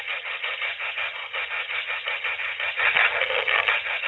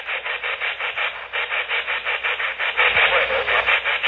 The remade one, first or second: first